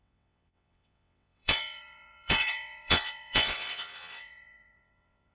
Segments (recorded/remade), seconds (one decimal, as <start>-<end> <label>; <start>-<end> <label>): 0.0-5.3 remade